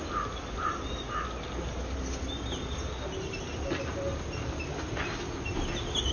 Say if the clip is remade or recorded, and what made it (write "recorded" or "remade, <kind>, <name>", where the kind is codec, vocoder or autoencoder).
recorded